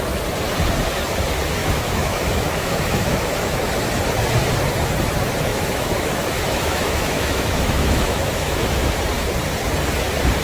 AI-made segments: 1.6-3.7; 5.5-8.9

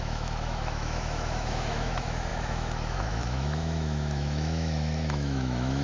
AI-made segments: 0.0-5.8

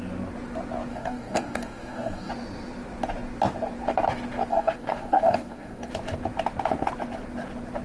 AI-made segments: 0.9-2.3; 4.5-5.9

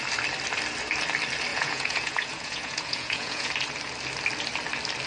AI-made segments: 1.5-3.5